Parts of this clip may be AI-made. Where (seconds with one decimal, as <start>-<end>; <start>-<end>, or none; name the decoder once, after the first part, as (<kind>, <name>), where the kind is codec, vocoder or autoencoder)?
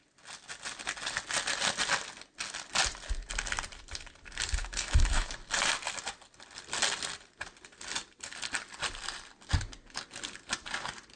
4.6-5.3 (autoencoder, DAC-VAE)